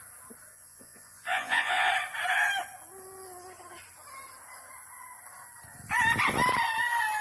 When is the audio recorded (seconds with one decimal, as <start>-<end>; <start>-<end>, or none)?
0.0-0.5; 1.9-7.2

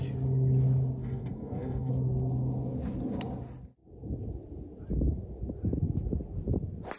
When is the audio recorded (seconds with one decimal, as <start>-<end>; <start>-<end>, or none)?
0.0-1.0; 1.9-7.0

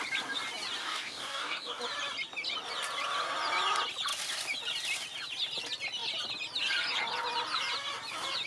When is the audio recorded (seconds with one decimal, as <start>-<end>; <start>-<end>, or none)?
0.0-0.8; 1.8-8.5

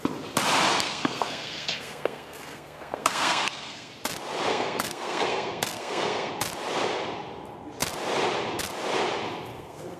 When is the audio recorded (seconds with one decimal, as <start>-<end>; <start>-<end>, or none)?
0.0-0.7; 3.9-4.5; 6.3-9.5